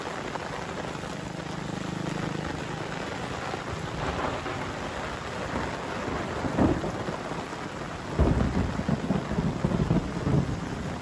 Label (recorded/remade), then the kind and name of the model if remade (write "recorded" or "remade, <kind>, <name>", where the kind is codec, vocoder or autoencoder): recorded